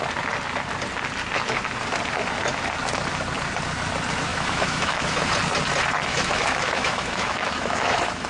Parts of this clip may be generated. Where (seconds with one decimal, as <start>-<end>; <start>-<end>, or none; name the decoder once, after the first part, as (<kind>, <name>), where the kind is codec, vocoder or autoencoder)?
4.3-5.3 (autoencoder, DAC-VAE); 6.1-8.3